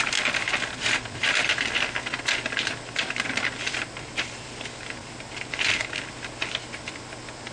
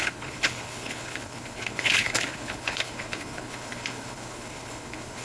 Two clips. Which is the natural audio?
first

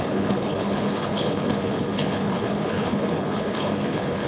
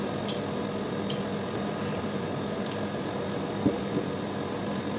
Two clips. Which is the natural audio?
second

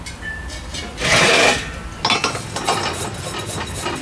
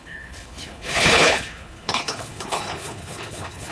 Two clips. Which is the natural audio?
first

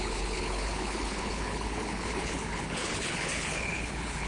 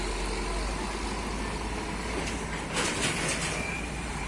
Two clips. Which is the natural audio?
second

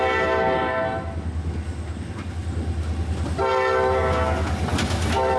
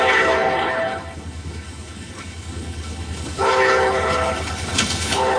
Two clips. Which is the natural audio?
first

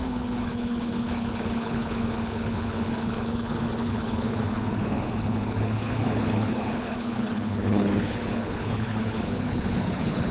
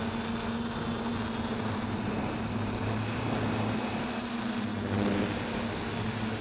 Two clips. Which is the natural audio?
second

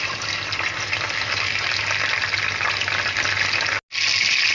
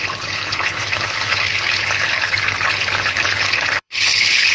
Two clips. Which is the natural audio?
first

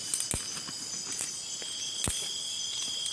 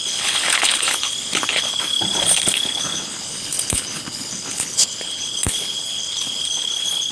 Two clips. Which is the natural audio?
first